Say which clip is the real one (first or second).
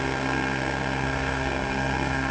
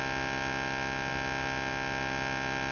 second